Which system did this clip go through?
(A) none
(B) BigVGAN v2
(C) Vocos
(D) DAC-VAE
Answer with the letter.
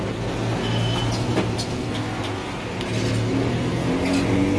A